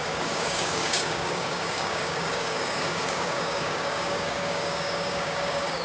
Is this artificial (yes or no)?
yes